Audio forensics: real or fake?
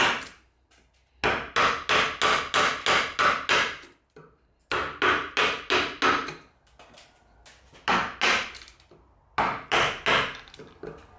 real